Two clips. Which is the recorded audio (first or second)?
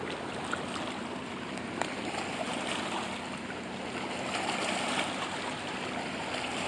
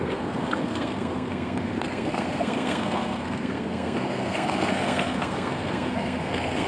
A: first